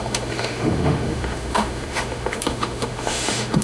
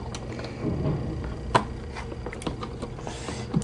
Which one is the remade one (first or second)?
first